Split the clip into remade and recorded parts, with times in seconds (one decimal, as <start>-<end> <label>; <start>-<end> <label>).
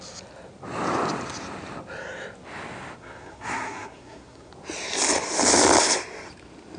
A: 0.0-3.0 recorded; 3.0-4.5 remade; 4.5-6.8 recorded